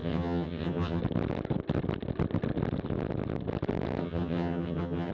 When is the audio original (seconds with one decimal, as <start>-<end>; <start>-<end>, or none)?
1.0-4.0